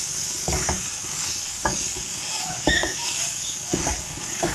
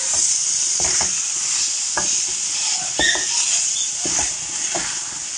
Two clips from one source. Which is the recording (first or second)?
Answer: second